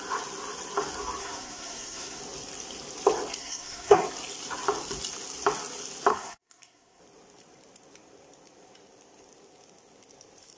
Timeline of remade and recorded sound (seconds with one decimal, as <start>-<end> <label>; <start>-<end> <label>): 0.0-1.2 recorded; 1.2-2.2 remade; 2.2-3.4 recorded; 3.4-4.0 remade; 4.0-6.1 recorded; 6.1-7.0 remade; 7.0-10.6 recorded